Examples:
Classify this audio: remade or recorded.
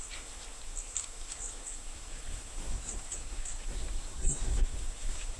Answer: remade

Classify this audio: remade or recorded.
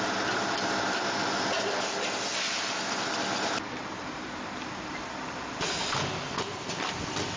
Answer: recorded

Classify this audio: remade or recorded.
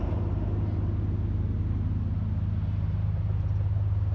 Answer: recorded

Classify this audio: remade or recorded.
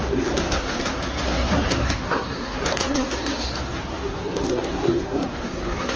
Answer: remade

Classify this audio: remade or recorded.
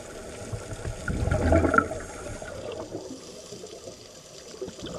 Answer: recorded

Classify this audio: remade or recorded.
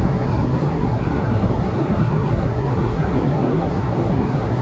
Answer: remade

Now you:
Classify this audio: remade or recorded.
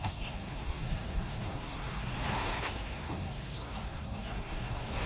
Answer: remade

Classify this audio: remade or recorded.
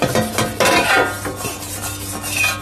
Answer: recorded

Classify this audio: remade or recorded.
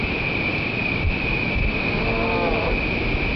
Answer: recorded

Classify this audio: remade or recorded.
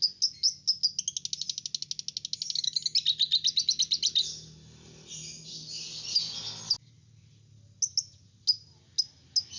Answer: recorded